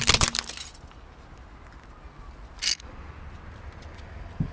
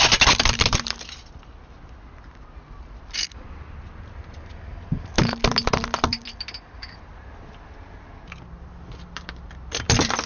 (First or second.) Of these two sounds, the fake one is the second